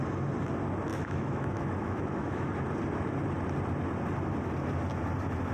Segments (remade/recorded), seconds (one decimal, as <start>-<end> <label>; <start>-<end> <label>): 0.0-0.9 recorded; 0.9-2.5 remade; 2.5-5.5 recorded